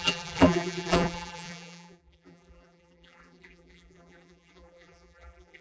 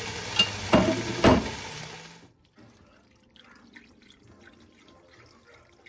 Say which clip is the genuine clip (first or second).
second